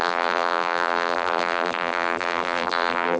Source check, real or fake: fake